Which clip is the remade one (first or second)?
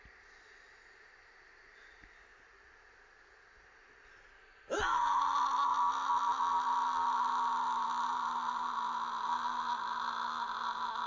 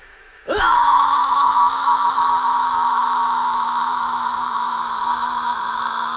second